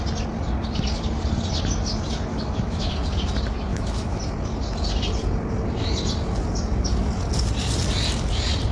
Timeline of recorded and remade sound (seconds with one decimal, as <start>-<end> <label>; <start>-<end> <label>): 0.0-2.3 recorded; 2.3-2.9 remade; 2.9-3.7 recorded; 3.7-4.2 remade; 4.2-8.7 recorded